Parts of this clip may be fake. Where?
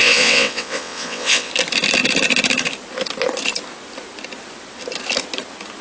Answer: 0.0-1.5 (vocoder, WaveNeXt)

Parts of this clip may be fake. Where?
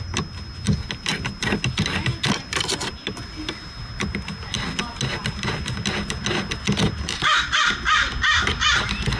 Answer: none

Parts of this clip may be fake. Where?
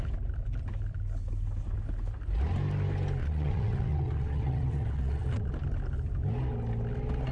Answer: 3.2-5.5 (vocoder, WaveNeXt)